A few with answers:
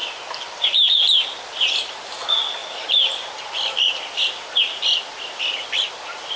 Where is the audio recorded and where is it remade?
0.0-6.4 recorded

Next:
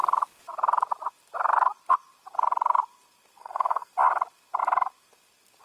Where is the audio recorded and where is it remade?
0.0-3.4 recorded; 3.4-3.9 remade; 3.9-5.6 recorded

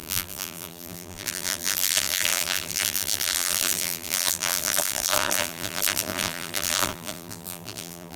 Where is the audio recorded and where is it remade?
0.0-8.2 remade

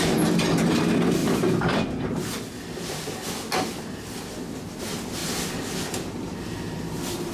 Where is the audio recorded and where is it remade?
0.0-7.3 recorded

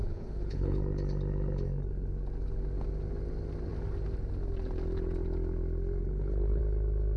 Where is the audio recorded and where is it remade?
0.0-0.8 remade; 0.8-6.0 recorded; 6.0-6.6 remade; 6.6-7.2 recorded

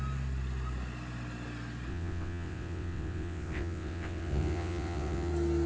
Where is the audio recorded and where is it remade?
0.0-1.9 recorded; 1.9-5.3 remade; 5.3-5.7 recorded